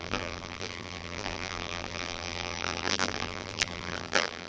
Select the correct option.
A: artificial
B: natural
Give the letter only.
A